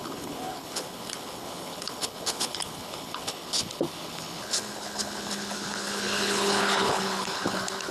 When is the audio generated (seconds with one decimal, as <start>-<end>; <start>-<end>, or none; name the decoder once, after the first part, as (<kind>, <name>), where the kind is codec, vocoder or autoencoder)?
0.0-7.9 (codec, HILCodec)